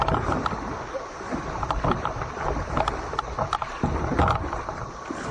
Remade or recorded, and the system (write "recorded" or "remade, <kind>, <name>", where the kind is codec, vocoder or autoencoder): recorded